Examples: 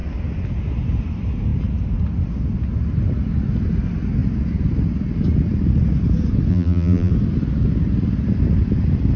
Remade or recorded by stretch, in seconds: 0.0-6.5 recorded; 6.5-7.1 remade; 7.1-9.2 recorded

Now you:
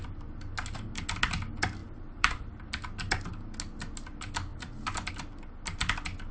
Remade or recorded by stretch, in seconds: 0.0-1.8 recorded; 1.8-2.6 remade; 2.6-4.5 recorded; 4.5-5.1 remade; 5.1-6.3 recorded

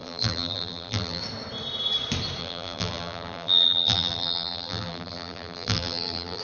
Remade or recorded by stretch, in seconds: 0.0-1.2 remade; 1.2-2.4 recorded; 2.4-6.4 remade

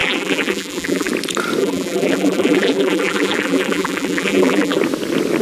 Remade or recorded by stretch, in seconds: 0.0-1.1 remade; 1.1-1.6 recorded; 1.6-4.8 remade; 4.8-5.4 recorded